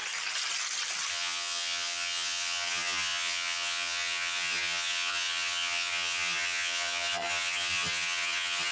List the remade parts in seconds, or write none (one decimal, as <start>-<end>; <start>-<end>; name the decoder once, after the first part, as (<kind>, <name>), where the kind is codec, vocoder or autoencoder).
1.1-8.7 (vocoder, HiFi-GAN)